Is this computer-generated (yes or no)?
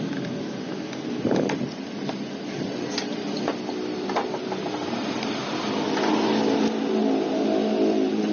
no